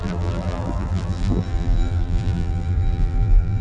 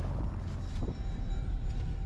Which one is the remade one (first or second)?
first